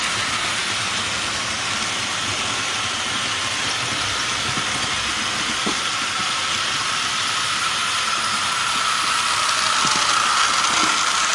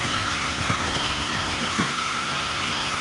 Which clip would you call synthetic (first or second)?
second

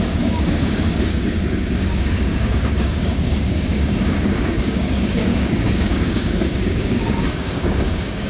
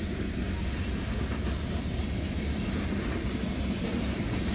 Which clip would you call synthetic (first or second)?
first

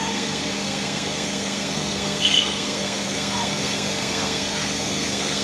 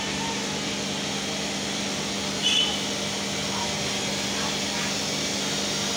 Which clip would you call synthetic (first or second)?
first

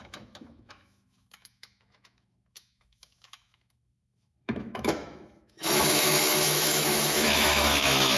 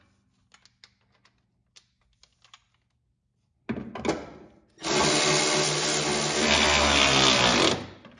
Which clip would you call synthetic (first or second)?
first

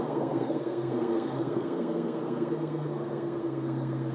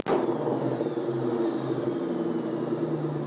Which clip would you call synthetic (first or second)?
first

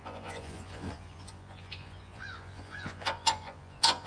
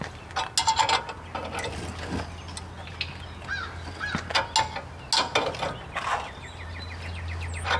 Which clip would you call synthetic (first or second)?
first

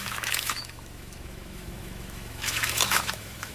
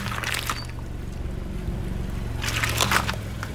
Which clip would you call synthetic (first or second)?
first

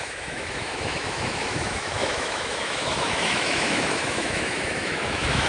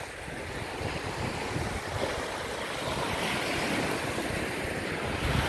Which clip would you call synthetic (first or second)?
first